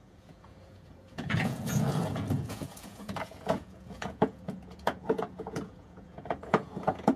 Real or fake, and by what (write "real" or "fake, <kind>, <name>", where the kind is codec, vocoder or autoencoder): fake, vocoder, Vocos